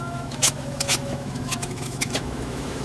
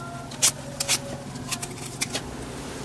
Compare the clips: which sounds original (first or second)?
second